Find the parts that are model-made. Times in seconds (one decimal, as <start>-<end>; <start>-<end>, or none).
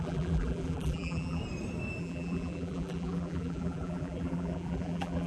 0.0-1.4; 2.0-5.3